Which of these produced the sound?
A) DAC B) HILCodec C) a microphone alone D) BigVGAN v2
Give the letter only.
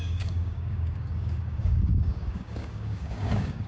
A